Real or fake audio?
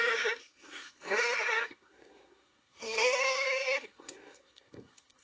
fake